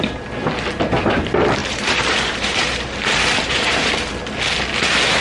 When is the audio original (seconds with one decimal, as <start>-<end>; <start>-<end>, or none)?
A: 0.0-1.6; 4.1-5.2